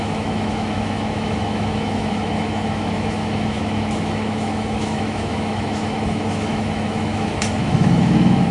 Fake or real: fake